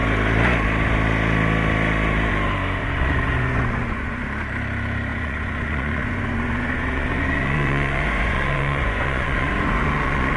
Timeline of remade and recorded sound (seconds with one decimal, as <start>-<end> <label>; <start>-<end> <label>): 0.0-2.8 recorded; 2.8-4.2 remade; 4.2-5.1 recorded; 5.1-10.4 remade